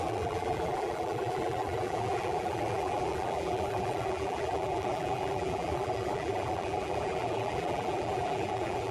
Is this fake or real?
fake